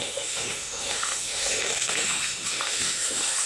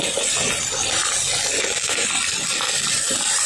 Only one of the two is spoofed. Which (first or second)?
first